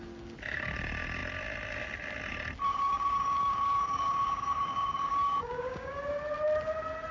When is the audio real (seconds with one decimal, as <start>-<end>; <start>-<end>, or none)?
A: 0.0-2.7; 6.0-7.1